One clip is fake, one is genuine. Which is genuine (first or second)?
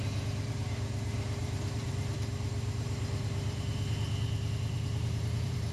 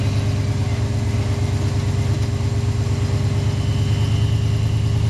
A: second